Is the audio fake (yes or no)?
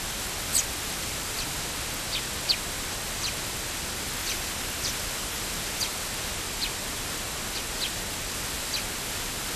no